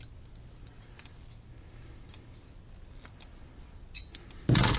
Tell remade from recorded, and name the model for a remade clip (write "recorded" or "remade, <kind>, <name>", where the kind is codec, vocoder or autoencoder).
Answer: recorded